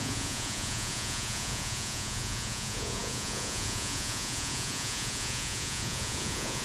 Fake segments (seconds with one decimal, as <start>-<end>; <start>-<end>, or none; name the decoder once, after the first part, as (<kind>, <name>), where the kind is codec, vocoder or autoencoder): 0.0-6.6 (vocoder, Vocos)